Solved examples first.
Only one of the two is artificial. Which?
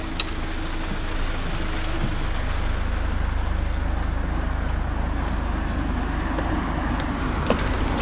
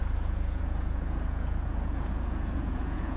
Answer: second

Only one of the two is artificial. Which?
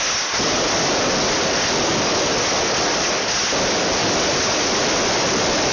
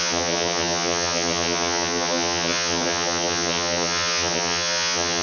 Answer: second